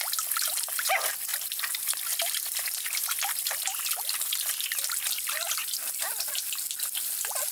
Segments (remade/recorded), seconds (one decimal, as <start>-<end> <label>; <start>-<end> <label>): 0.0-7.5 recorded